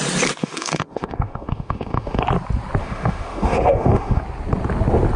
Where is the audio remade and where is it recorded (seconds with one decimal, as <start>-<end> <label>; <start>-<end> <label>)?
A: 0.0-0.4 recorded; 0.4-2.2 remade; 2.2-2.8 recorded; 2.8-4.2 remade; 4.2-5.2 recorded

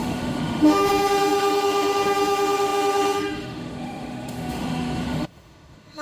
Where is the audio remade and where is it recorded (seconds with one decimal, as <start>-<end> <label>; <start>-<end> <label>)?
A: 0.0-6.0 remade

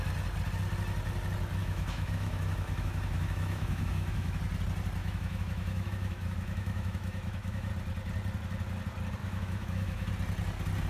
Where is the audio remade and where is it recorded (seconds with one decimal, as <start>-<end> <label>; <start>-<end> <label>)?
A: 0.0-1.6 recorded; 1.6-4.4 remade; 4.4-5.0 recorded; 5.0-7.7 remade; 7.7-9.2 recorded; 9.2-10.1 remade; 10.1-10.9 recorded

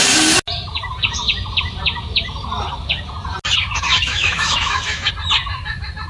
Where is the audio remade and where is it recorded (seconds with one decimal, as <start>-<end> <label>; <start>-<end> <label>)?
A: 0.0-3.9 recorded; 3.9-5.1 remade; 5.1-6.1 recorded